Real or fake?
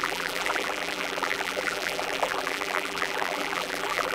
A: fake